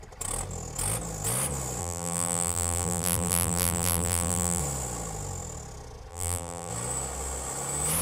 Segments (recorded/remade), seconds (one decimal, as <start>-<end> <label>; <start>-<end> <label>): 0.0-1.8 recorded; 1.8-4.6 remade; 4.6-6.1 recorded; 6.1-6.7 remade; 6.7-8.0 recorded